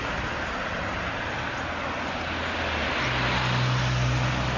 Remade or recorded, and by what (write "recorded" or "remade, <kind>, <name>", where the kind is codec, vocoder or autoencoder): recorded